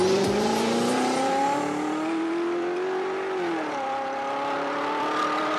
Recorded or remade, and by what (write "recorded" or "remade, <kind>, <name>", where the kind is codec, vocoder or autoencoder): remade, vocoder, BigVGAN v2